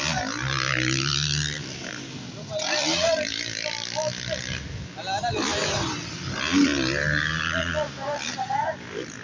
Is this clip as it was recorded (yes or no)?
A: yes